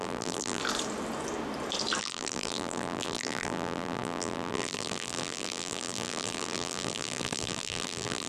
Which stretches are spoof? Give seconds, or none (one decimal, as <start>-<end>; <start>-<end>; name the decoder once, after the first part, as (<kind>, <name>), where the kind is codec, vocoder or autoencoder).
0.0-0.6 (vocoder, BigVGAN v2); 2.0-8.3

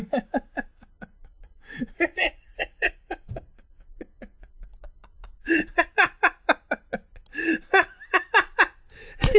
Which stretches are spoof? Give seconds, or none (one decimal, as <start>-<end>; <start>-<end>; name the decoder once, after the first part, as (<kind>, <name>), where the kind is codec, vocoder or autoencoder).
1.2-5.9 (vocoder, Vocos)

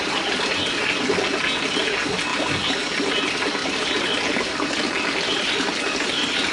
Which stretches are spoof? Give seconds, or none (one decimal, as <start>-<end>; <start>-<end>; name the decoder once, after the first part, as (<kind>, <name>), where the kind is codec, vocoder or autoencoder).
3.6-4.2 (vocoder, BigVGAN v2)

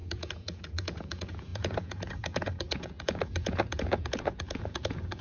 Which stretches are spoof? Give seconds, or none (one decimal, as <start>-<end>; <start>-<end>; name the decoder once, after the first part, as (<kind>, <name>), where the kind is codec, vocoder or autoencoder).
0.0-5.2 (vocoder, Vocos)

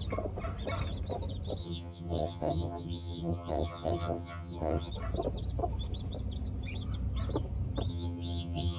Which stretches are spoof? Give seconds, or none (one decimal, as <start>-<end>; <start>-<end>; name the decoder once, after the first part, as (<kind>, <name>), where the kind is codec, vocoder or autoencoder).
1.6-4.9 (vocoder, HiFi-GAN); 7.9-8.8

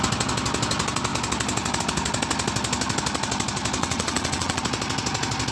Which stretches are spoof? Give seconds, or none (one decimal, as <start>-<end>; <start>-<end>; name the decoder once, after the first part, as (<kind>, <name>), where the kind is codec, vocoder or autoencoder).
3.8-4.6 (vocoder, WaveNeXt)

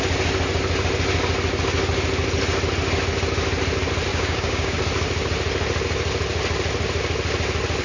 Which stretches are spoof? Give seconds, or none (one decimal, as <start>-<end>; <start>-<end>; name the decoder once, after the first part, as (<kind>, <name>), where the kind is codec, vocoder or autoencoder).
4.1-4.8 (codec, DAC)

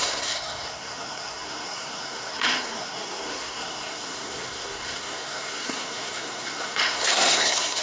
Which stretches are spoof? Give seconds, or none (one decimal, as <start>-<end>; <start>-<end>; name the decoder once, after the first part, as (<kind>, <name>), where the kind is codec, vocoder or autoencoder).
0.0-7.8 (codec, SNAC)